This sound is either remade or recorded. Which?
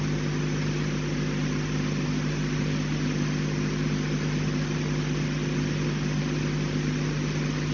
recorded